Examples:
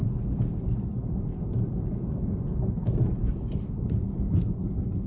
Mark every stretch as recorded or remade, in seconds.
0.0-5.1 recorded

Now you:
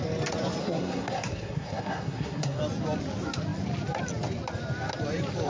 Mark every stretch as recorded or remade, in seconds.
0.0-0.6 recorded; 0.6-2.6 remade; 2.6-5.5 recorded

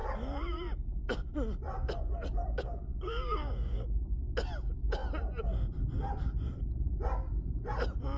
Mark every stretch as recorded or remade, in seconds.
0.0-2.4 recorded; 2.4-4.1 remade; 4.1-8.2 recorded

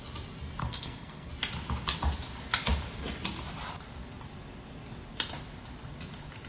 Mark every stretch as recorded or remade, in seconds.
0.0-0.6 recorded; 0.6-1.3 remade; 1.3-6.5 recorded

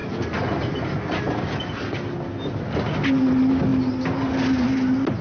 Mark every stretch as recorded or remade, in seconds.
0.0-5.2 recorded

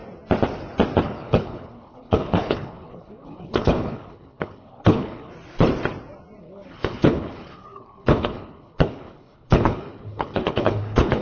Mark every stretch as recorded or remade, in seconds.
0.0-1.0 recorded; 1.0-5.3 remade; 5.3-6.4 recorded; 6.4-11.2 remade

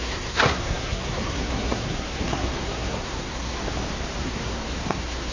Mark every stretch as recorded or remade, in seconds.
0.0-3.6 remade; 3.6-4.2 recorded; 4.2-5.3 remade